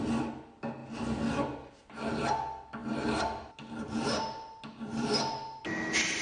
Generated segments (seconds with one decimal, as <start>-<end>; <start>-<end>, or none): none

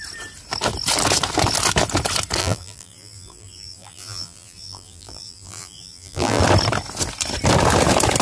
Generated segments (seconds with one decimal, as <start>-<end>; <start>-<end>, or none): 2.4-6.4

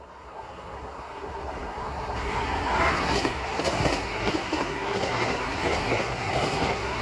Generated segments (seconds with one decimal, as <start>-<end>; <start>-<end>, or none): 0.0-7.0

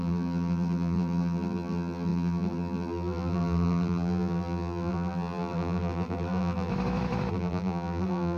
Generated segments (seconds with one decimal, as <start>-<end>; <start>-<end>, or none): 0.0-6.7; 7.3-8.4

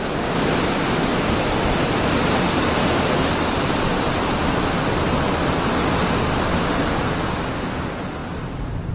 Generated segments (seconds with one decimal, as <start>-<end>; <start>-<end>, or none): 1.1-4.8; 8.2-8.9

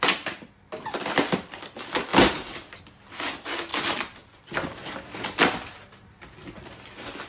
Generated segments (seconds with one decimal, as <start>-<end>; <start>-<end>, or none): none